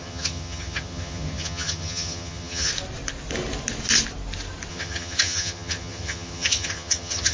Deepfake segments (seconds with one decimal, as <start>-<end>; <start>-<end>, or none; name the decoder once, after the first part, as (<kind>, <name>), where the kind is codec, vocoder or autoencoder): 0.0-2.7 (vocoder, HiFi-GAN); 4.7-7.3